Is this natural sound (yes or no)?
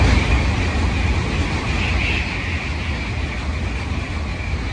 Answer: yes